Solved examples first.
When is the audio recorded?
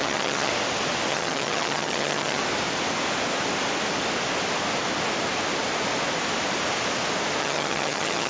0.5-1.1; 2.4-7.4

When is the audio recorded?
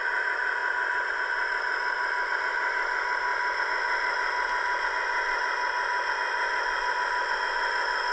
0.0-8.1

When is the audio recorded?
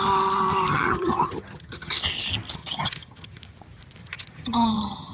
0.0-0.7; 2.0-2.6; 3.4-4.0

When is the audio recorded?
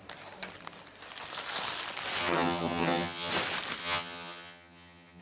0.0-2.2; 3.3-3.8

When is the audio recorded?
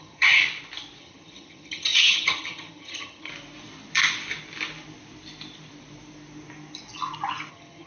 0.4-1.0; 3.3-7.5